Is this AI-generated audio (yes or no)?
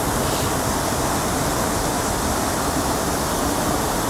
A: no